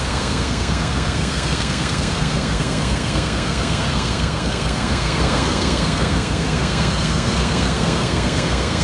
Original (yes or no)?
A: no